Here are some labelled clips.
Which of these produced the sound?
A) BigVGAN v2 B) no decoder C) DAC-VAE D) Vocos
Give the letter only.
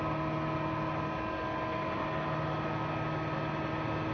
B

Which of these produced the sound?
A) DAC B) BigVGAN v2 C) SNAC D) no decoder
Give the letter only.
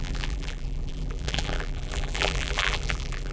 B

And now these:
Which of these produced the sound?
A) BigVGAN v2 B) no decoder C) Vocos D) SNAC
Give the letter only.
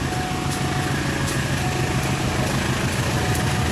B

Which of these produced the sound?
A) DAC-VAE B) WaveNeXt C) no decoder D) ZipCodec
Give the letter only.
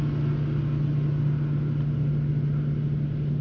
C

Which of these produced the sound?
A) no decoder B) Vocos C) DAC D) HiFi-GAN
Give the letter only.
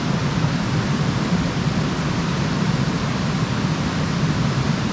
A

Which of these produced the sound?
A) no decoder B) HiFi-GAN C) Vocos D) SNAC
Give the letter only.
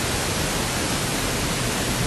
A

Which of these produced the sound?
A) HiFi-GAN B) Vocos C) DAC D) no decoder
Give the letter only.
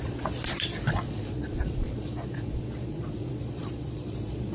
B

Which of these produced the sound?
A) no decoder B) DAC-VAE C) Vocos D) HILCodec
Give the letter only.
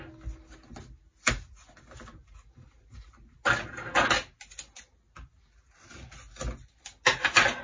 A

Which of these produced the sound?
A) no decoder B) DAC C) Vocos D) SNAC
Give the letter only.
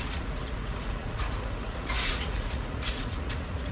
C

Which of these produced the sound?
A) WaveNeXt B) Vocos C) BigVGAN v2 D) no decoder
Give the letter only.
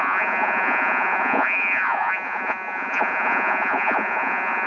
B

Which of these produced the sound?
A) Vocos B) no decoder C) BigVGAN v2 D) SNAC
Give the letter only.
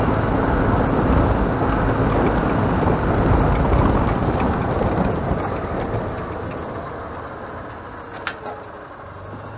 B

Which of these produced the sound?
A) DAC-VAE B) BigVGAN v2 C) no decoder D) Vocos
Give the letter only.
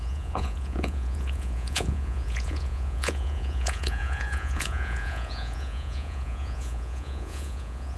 D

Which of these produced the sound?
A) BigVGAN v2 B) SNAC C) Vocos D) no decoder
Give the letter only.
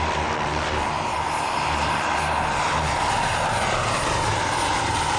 D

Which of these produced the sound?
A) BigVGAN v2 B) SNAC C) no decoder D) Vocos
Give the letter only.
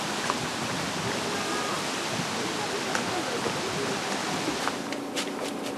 C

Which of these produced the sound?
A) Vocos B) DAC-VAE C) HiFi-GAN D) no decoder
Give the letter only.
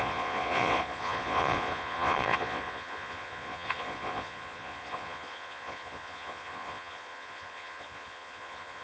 A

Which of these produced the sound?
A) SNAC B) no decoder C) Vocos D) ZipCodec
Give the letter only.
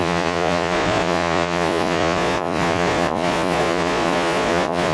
C